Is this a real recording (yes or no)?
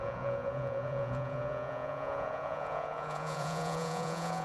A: no